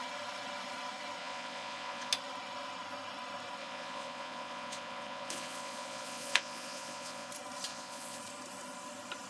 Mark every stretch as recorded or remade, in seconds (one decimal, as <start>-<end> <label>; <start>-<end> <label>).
0.0-1.2 recorded; 1.2-2.1 remade; 2.1-3.6 recorded; 3.6-7.3 remade; 7.3-7.7 recorded; 7.7-8.2 remade; 8.2-9.3 recorded